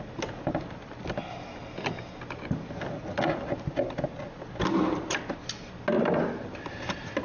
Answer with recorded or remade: recorded